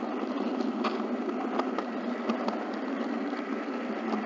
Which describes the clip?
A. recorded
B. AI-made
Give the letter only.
A